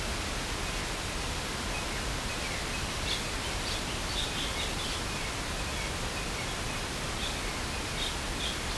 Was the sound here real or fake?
real